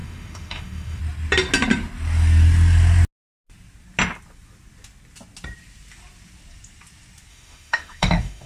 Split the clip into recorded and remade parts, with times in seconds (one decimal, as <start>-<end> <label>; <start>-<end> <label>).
0.0-1.0 remade; 1.0-7.3 recorded; 7.3-8.5 remade